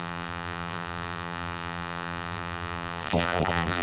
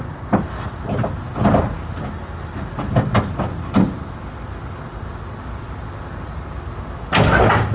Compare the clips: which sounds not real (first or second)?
first